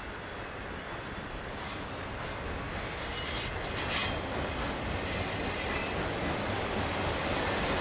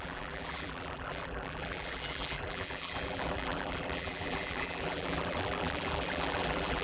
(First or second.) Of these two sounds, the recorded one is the first